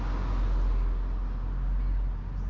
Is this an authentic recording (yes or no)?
yes